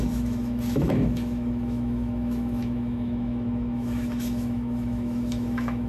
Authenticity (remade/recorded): remade